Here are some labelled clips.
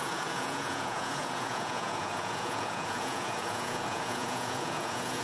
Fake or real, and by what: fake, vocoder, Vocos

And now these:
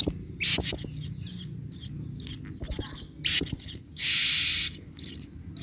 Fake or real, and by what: real